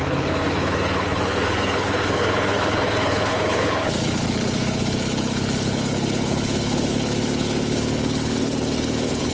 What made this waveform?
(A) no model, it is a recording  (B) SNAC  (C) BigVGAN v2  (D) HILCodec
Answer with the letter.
D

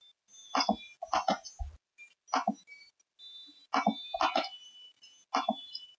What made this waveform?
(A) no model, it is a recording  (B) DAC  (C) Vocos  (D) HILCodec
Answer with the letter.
A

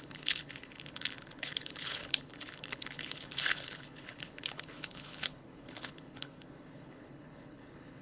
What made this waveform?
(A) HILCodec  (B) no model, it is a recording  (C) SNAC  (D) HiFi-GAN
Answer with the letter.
A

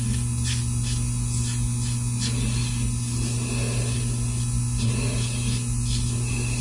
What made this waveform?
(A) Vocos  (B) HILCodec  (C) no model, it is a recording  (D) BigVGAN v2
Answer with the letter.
C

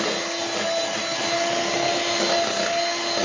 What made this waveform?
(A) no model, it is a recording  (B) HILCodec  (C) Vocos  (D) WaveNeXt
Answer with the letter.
A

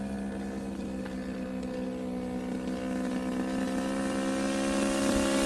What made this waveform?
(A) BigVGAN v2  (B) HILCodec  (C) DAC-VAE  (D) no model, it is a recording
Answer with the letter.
D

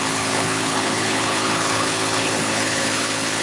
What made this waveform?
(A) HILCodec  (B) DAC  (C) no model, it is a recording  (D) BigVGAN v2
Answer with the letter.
A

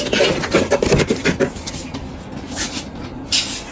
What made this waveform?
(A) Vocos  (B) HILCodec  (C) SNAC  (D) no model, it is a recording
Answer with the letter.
D